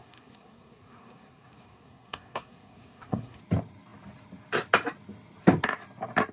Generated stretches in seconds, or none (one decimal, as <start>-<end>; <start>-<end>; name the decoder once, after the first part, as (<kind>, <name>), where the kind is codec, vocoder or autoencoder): 0.0-3.4 (codec, SNAC)